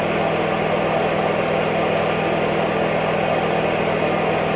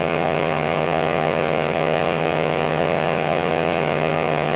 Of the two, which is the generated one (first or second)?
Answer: second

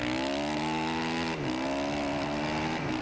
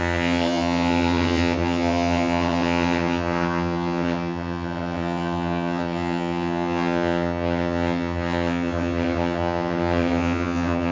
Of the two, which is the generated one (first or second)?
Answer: second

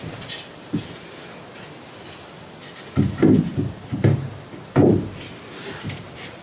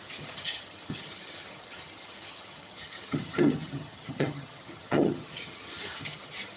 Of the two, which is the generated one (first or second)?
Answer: second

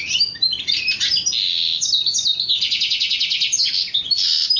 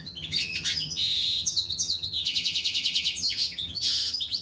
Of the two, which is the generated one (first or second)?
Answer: second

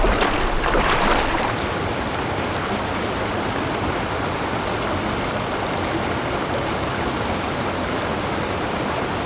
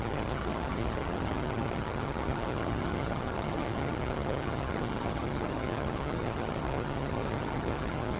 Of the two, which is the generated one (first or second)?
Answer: second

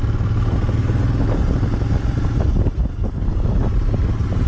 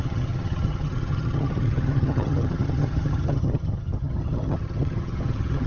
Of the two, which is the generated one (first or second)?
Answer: second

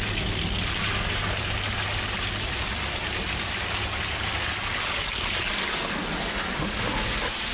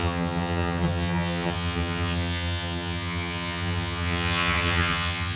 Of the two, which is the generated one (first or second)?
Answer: second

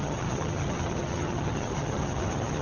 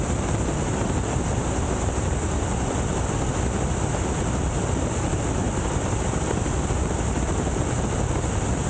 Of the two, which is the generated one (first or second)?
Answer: first